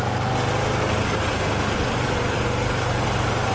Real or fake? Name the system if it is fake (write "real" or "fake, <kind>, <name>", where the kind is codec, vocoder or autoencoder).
real